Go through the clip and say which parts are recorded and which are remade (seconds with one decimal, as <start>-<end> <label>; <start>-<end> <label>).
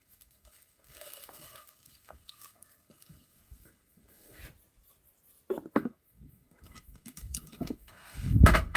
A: 0.0-4.4 remade; 4.4-5.7 recorded; 5.7-8.8 remade